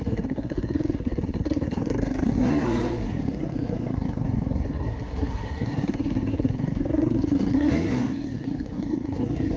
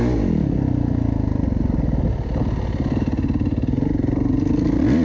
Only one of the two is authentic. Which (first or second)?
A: second